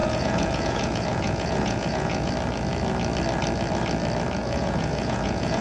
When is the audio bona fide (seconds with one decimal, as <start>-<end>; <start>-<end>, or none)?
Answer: 2.3-4.4